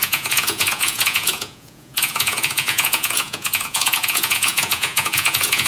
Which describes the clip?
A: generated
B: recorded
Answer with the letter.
A